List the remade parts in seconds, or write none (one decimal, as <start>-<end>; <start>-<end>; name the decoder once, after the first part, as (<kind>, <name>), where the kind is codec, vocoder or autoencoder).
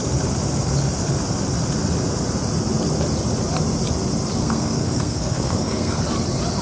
4.4-6.0 (codec, SNAC)